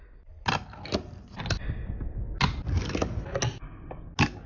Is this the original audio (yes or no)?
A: yes